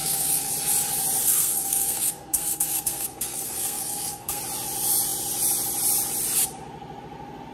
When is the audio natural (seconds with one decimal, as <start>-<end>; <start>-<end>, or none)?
0.5-1.2; 4.4-7.5

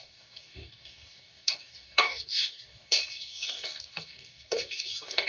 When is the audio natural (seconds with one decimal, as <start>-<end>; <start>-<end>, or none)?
none

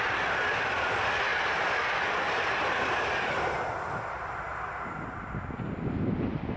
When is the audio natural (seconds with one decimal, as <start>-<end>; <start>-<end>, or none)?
0.0-6.6

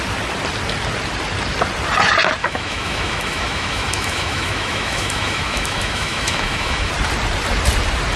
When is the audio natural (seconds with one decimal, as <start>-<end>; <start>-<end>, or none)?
0.0-2.4; 6.9-8.2

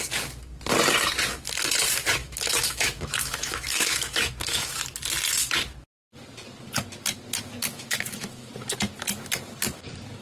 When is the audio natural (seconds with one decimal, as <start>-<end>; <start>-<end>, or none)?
0.0-2.2; 4.8-7.7; 8.5-10.2

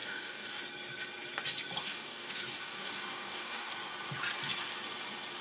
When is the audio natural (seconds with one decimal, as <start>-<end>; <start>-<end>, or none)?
0.6-1.8; 3.7-5.4